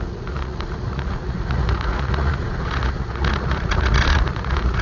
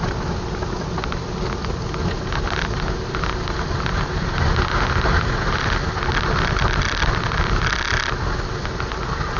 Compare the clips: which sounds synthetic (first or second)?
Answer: first